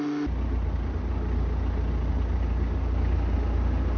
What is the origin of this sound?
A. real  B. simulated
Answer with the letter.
A